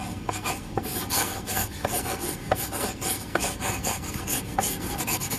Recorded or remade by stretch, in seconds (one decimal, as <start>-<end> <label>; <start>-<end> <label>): 0.0-5.4 remade